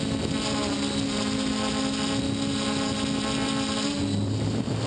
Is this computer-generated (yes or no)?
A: no